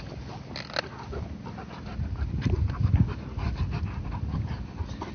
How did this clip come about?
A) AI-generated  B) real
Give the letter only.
B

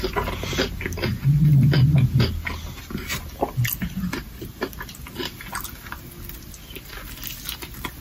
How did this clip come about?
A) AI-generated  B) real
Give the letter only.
B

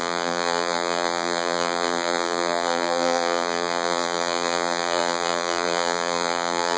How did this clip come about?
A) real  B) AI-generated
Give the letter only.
B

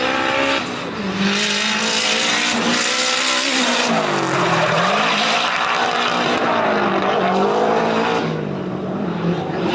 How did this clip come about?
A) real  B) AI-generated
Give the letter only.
A